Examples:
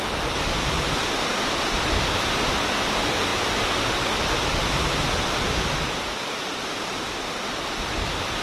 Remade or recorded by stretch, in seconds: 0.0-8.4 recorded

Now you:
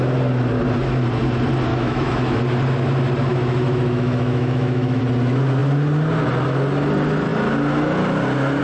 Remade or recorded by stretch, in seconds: 0.0-1.7 recorded; 1.7-2.4 remade; 2.4-3.3 recorded; 3.3-5.0 remade; 5.0-8.6 recorded

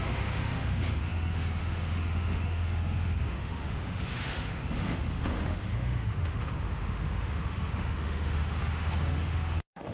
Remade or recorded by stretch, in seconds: 0.0-9.9 remade

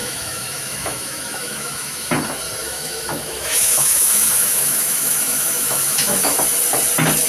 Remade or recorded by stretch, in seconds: 0.0-2.1 remade; 2.1-2.6 recorded; 2.6-6.4 remade; 6.4-7.3 recorded

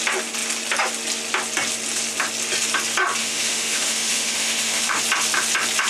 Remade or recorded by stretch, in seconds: 0.0-3.2 recorded; 3.2-5.0 remade; 5.0-5.9 recorded